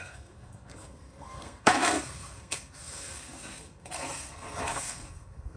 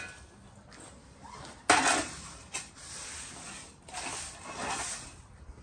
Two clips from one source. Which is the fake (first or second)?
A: first